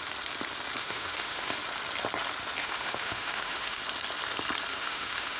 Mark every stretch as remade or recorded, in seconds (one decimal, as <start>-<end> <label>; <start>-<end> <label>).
0.0-0.8 recorded; 0.8-1.5 remade; 1.5-2.6 recorded; 2.6-3.8 remade; 3.8-4.8 recorded; 4.8-5.4 remade